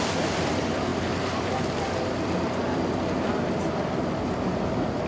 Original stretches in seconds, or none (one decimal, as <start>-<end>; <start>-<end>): 0.0-5.1